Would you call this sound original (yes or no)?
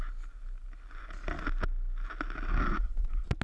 yes